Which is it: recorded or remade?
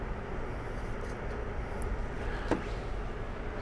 recorded